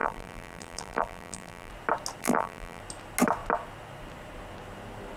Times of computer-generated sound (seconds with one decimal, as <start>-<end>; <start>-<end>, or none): 0.0-1.7; 2.2-2.8